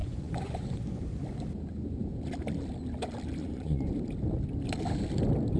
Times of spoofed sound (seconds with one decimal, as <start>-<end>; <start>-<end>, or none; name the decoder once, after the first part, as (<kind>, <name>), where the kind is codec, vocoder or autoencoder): 0.0-1.0 (vocoder, Vocos); 3.4-3.9